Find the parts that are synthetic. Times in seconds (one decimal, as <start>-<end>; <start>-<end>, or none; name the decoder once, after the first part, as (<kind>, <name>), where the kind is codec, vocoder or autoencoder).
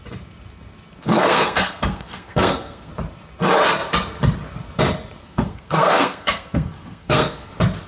1.1-2.9 (codec, SNAC); 5.2-7.5